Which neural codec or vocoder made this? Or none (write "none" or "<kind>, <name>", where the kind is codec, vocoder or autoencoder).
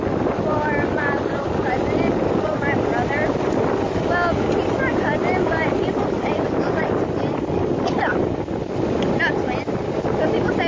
none